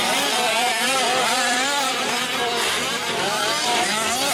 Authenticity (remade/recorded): remade